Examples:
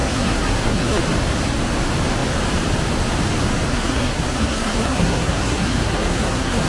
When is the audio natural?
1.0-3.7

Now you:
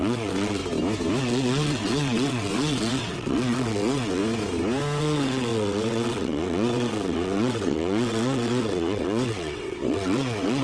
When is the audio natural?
0.6-1.2; 4.2-5.0

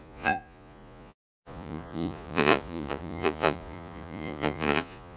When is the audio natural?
none

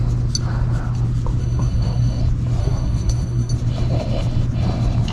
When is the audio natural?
0.0-1.4; 2.2-2.6; 3.5-5.1

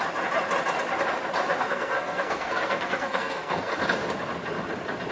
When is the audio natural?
0.0-1.6; 3.7-5.1